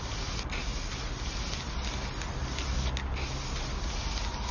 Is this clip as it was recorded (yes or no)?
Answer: yes